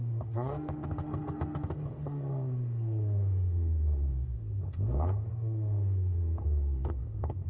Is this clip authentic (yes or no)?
no